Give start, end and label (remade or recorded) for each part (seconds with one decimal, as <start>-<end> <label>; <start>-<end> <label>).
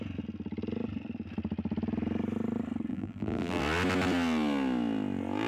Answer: 0.0-2.9 recorded; 2.9-3.6 remade; 3.6-5.5 recorded